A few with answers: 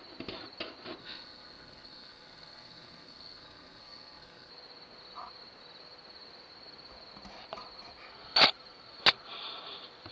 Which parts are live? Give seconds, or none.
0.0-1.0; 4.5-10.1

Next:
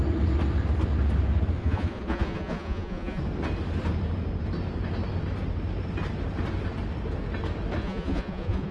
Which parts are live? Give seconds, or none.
0.0-1.6; 3.2-7.8